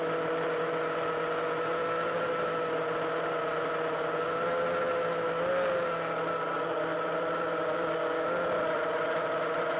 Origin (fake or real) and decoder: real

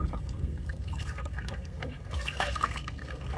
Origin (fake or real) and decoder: fake, codec, SNAC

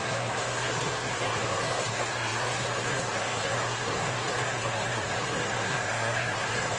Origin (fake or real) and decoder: fake, codec, SNAC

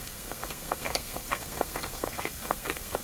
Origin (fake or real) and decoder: fake, codec, SNAC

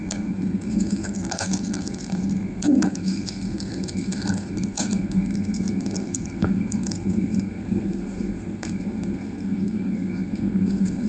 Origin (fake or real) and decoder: fake, codec, SNAC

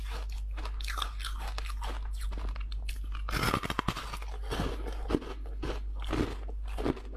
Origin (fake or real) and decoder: real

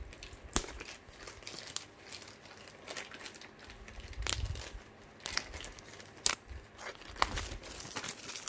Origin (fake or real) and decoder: real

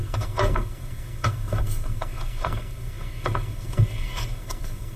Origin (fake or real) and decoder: fake, codec, SNAC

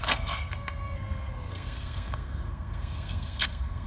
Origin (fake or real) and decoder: fake, codec, SNAC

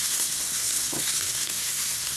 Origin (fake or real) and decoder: fake, codec, SNAC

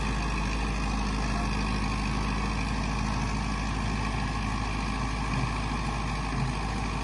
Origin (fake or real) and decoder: real